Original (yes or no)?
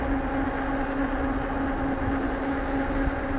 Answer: yes